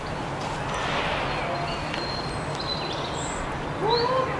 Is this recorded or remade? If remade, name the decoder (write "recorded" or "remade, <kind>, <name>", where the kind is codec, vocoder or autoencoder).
recorded